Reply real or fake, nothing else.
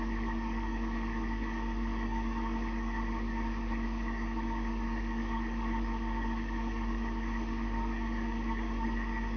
fake